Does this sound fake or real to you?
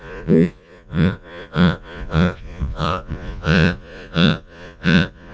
fake